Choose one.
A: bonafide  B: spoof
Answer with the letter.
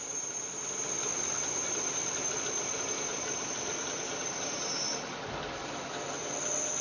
A